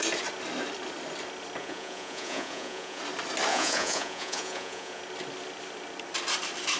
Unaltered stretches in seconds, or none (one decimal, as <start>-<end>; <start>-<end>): 0.0-1.6; 3.0-3.5; 5.0-6.8